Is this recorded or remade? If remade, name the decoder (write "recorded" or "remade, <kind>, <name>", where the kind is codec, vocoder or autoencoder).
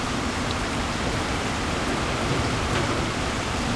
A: remade, vocoder, BigVGAN v2